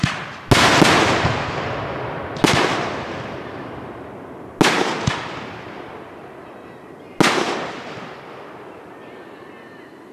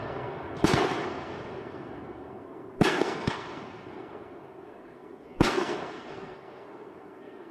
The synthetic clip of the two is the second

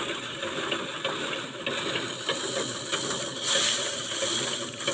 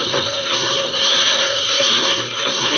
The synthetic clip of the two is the second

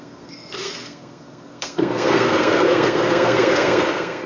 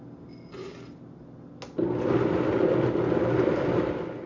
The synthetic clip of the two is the first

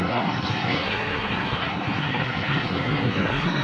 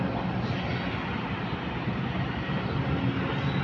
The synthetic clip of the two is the first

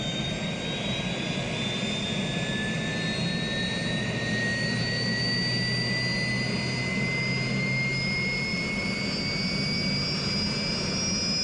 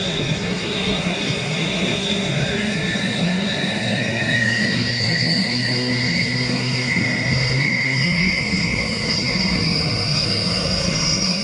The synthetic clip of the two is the second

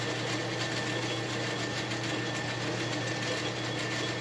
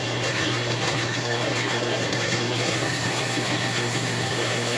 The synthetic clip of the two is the second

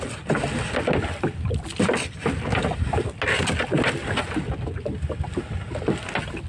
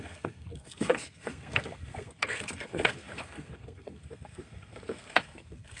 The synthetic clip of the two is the second